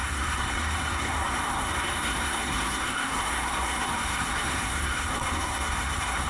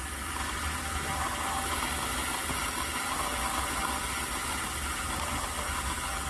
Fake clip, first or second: first